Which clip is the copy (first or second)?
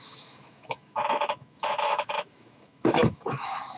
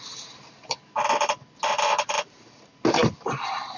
first